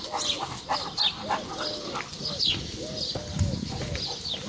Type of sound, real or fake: real